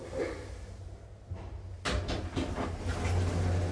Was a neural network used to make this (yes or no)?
no